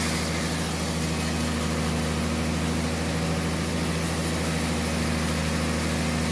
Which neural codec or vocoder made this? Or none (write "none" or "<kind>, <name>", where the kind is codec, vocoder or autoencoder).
none